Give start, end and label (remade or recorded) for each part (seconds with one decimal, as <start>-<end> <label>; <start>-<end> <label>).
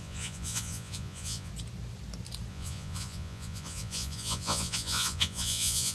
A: 0.0-1.5 remade; 1.5-2.5 recorded; 2.5-5.9 remade